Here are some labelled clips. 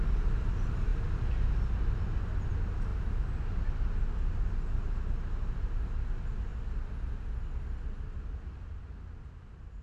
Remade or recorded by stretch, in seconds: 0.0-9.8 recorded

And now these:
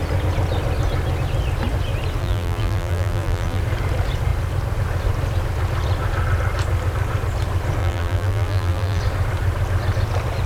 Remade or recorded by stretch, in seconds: 0.0-2.2 recorded; 2.2-3.6 remade; 3.6-7.8 recorded; 7.8-9.0 remade; 9.0-10.5 recorded

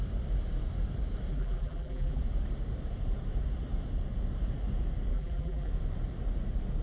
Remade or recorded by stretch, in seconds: 0.0-1.3 recorded; 1.3-2.2 remade; 2.2-5.1 recorded; 5.1-5.7 remade; 5.7-6.8 recorded

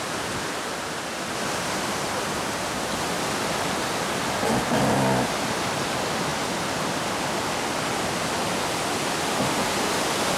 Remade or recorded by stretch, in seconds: 0.0-4.8 recorded; 4.8-5.8 remade; 5.8-10.4 recorded

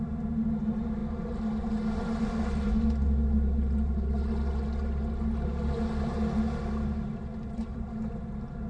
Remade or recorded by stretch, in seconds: 0.0-7.3 recorded; 7.3-8.2 remade; 8.2-8.7 recorded

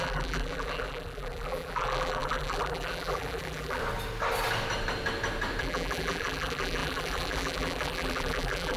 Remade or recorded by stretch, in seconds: 0.0-3.8 remade; 3.8-5.6 recorded; 5.6-8.8 remade

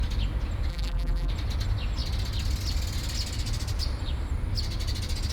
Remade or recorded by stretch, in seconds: 0.0-0.7 recorded; 0.7-1.3 remade; 1.3-5.3 recorded